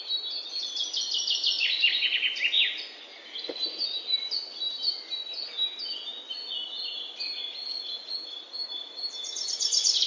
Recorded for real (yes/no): yes